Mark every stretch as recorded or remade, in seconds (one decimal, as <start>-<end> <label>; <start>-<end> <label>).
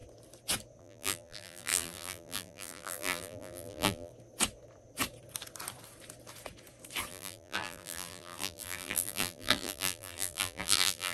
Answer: 0.0-0.8 recorded; 0.8-4.1 remade; 4.1-7.1 recorded; 7.1-11.1 remade